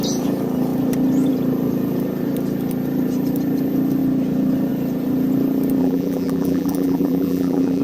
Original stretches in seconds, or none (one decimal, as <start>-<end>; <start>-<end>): 0.0-5.8